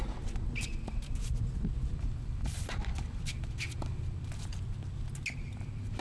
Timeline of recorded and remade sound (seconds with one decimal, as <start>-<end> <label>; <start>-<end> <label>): 0.0-1.9 recorded; 1.9-4.5 remade; 4.5-5.4 recorded; 5.4-6.0 remade